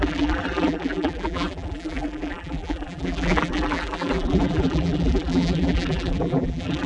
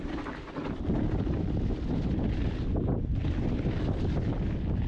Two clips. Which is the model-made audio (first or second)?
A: first